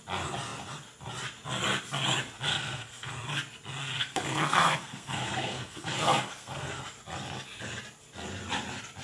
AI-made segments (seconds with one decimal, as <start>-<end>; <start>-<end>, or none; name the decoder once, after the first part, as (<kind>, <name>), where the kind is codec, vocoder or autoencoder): 2.5-3.1 (codec, SNAC); 3.8-6.8